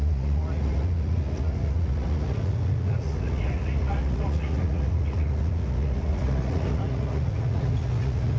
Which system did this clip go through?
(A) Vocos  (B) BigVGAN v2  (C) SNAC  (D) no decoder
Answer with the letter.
A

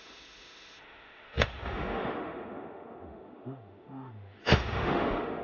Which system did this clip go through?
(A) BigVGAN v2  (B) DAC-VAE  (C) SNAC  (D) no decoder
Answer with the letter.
B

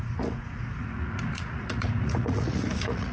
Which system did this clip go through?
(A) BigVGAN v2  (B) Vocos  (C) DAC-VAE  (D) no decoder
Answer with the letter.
B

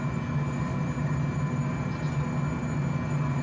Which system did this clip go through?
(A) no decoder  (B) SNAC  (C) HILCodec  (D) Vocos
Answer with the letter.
A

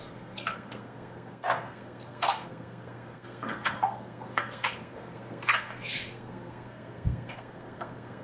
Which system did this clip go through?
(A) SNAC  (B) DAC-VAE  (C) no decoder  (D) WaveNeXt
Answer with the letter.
A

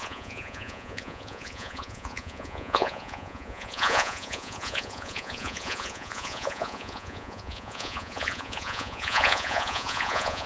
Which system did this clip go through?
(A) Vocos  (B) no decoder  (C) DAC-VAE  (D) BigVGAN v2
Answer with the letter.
A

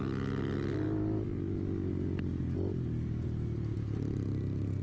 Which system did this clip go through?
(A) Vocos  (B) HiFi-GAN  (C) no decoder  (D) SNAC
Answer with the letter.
C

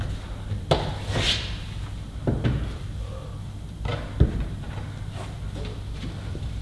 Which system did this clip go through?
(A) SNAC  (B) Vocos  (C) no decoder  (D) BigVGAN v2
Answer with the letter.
C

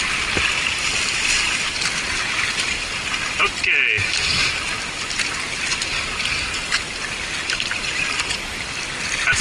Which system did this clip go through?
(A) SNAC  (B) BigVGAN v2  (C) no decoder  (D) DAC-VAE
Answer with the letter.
C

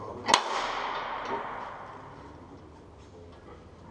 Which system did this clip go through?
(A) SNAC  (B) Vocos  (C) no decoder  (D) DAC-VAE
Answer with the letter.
C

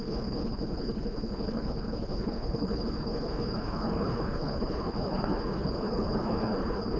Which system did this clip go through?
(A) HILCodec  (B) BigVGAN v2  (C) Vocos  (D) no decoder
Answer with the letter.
A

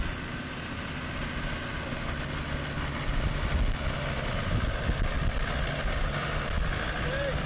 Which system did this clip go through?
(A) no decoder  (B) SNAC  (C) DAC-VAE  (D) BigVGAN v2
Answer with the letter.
A